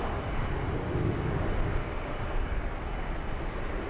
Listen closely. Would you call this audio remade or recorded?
recorded